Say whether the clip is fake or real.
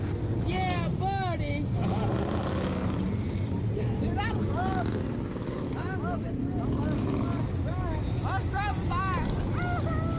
real